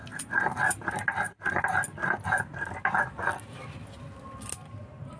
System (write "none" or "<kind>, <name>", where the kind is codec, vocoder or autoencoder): none